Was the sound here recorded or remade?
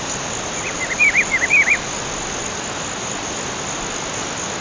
recorded